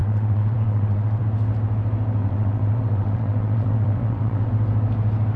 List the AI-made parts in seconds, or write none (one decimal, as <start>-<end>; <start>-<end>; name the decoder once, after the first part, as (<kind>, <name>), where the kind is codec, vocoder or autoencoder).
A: 0.0-1.2 (vocoder, WaveNeXt); 2.2-4.5

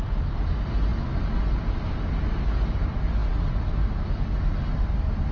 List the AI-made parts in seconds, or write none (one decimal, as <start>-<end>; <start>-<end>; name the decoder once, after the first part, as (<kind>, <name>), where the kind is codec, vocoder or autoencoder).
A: none

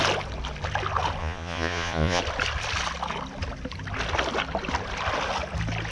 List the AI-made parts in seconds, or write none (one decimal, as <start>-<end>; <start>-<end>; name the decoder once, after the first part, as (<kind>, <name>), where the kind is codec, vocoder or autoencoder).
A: 1.2-2.2 (vocoder, Vocos)

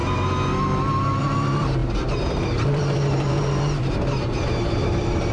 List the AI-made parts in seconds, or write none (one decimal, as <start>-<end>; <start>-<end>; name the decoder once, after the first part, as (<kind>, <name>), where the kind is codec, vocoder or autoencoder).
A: 1.2-5.3 (vocoder, BigVGAN v2)